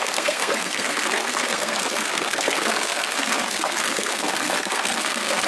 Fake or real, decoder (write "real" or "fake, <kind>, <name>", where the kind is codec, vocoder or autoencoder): fake, codec, SNAC